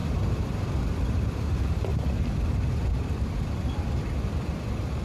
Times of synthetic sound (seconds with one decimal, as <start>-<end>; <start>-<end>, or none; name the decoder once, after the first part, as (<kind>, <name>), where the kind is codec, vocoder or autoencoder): 0.0-1.9 (vocoder, BigVGAN v2); 3.4-5.0